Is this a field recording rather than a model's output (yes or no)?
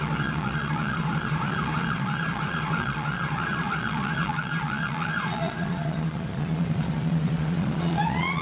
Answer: no